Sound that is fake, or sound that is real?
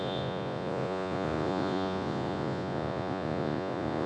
fake